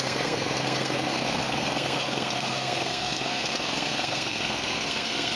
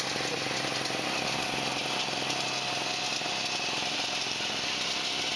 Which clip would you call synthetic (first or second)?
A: first